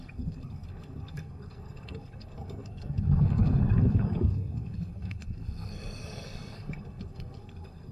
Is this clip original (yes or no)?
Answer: no